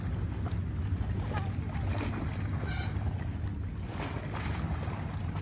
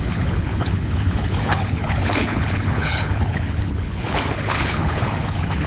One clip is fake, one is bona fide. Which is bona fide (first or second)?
first